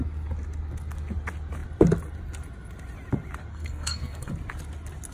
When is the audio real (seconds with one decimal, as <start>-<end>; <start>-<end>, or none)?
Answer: 0.0-3.5; 4.3-5.1